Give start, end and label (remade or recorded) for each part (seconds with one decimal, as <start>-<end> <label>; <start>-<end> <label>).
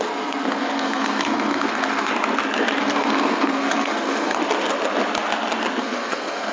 0.0-2.1 remade; 2.1-2.8 recorded; 2.8-4.4 remade; 4.4-5.8 recorded; 5.8-6.5 remade